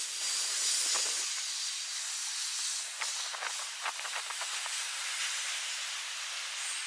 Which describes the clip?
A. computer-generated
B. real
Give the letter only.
B